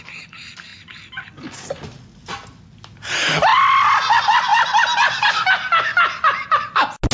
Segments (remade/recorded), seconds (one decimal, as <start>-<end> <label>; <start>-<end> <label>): 0.0-7.1 recorded